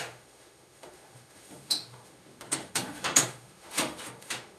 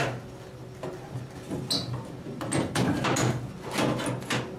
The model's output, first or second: first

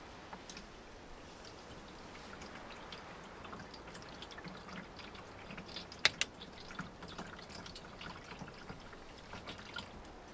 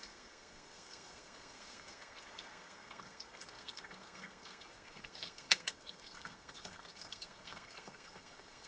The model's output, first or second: second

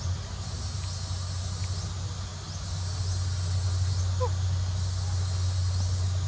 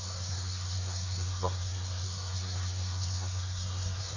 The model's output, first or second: second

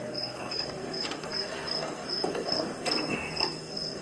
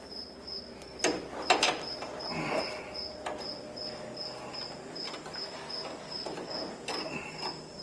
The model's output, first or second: first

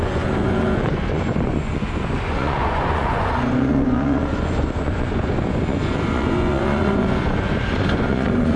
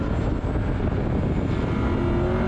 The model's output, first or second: first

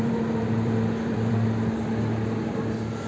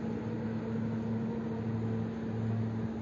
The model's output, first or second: first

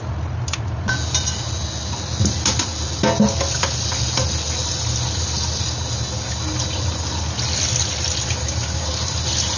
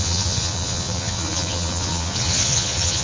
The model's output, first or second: second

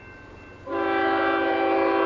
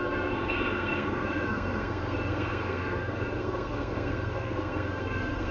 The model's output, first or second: second